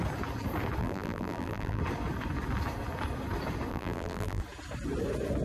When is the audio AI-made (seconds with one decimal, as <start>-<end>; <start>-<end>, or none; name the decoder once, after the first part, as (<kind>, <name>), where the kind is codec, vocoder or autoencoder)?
0.8-1.8 (vocoder, BigVGAN v2); 3.7-4.4